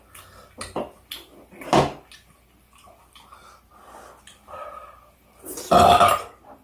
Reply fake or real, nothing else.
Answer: real